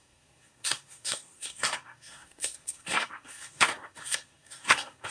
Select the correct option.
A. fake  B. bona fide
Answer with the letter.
A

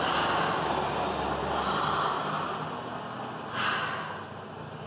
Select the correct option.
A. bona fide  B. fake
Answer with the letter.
A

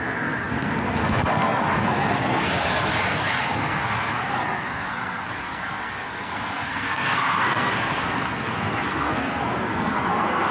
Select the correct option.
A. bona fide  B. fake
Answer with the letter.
B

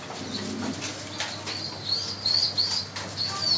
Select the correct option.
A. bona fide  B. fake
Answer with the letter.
A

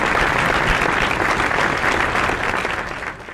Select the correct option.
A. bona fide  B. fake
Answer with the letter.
A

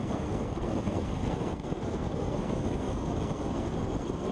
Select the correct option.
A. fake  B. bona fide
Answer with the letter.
A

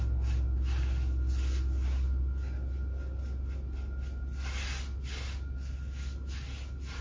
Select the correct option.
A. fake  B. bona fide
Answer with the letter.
B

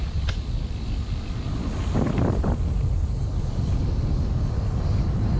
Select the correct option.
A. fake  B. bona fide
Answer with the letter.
B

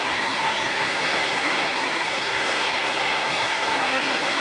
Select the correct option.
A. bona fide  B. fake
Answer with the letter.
B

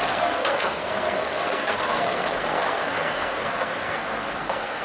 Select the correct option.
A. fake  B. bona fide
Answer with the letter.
A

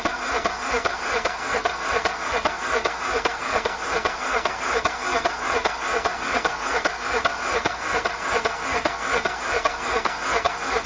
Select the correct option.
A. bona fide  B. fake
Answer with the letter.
B